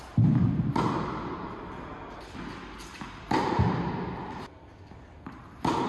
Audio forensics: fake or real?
real